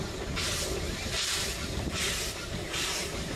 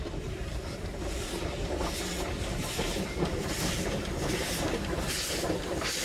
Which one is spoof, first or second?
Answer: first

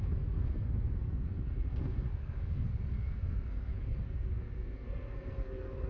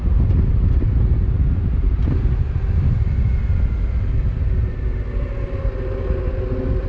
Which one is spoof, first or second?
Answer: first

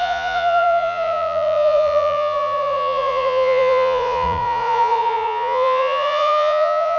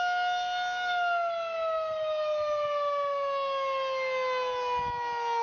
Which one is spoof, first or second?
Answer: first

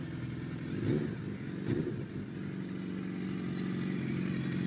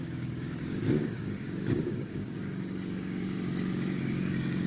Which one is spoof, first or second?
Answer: second